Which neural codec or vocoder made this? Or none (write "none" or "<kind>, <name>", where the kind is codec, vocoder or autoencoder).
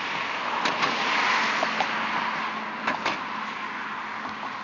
none